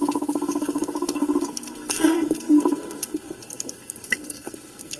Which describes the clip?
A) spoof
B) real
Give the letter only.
A